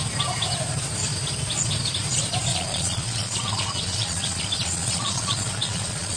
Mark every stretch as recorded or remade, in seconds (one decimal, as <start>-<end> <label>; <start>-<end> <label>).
0.0-2.5 recorded; 2.5-6.2 remade